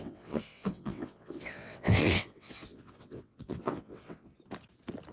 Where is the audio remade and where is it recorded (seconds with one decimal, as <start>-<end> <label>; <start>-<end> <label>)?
0.0-4.3 remade; 4.3-5.1 recorded